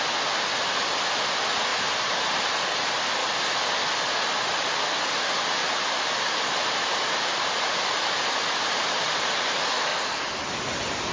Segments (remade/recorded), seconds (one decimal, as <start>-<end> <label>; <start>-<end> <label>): 0.0-1.7 recorded; 1.7-2.2 remade; 2.2-5.6 recorded; 5.6-9.4 remade; 9.4-9.9 recorded; 9.9-10.5 remade; 10.5-11.1 recorded

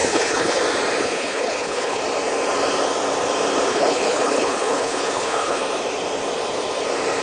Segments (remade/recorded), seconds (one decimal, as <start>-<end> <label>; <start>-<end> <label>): 0.0-0.6 remade; 0.6-1.0 recorded; 1.0-2.0 remade; 2.0-3.7 recorded; 3.7-5.6 remade; 5.6-7.2 recorded

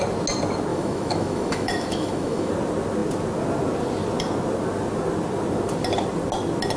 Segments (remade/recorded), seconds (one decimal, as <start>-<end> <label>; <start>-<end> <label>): 0.0-0.7 recorded; 0.7-2.5 remade; 2.5-6.8 recorded

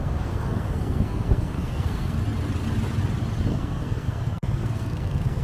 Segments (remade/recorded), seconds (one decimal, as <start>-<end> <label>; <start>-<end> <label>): 0.0-2.2 remade; 2.2-3.5 recorded; 3.5-5.4 remade